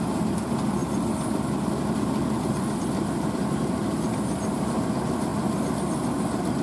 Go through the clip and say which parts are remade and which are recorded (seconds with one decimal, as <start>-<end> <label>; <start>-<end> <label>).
0.0-0.8 remade; 0.8-4.8 recorded; 4.8-5.3 remade; 5.3-6.6 recorded